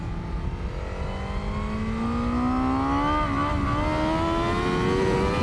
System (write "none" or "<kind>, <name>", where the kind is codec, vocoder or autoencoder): none